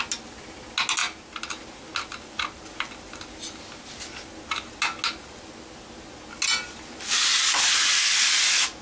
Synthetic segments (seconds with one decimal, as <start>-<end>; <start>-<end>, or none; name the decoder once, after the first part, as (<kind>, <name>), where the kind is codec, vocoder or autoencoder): none